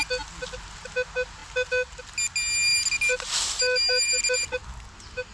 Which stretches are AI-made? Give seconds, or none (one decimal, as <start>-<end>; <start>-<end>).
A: none